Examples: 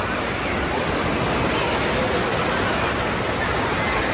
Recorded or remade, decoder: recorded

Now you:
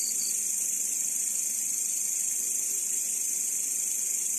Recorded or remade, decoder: recorded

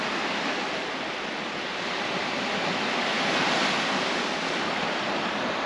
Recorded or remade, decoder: remade, vocoder, BigVGAN v2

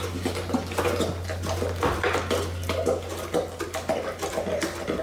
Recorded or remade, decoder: recorded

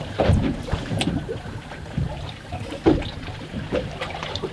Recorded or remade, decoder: remade, vocoder, BigVGAN v2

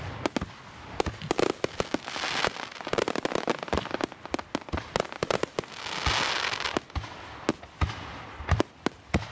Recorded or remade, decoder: recorded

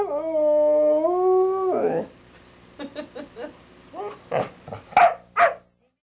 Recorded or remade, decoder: recorded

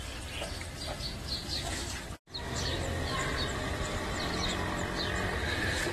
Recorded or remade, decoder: recorded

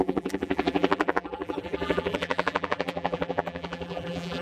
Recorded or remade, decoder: remade, vocoder, BigVGAN v2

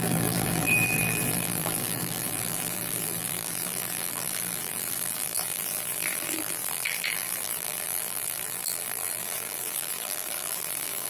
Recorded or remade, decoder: remade, vocoder, BigVGAN v2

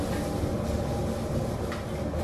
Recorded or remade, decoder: recorded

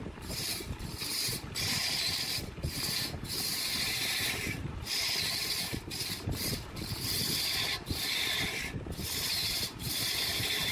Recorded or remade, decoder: remade, vocoder, BigVGAN v2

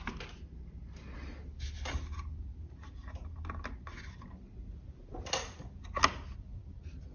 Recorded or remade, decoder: recorded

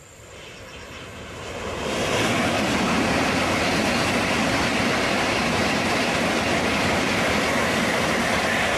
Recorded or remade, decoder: remade, vocoder, BigVGAN v2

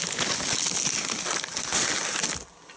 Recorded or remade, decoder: recorded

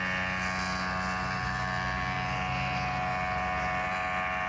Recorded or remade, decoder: recorded